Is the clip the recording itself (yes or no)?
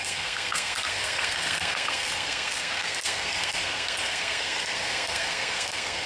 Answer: no